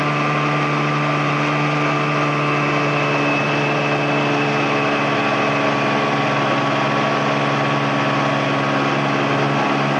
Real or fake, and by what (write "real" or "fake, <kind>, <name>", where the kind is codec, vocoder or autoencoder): real